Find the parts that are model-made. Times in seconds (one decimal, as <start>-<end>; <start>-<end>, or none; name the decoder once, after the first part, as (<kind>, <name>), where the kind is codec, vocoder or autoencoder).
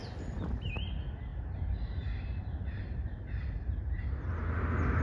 1.3-4.3 (vocoder, BigVGAN v2)